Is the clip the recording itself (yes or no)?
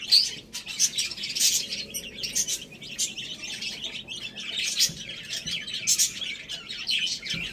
yes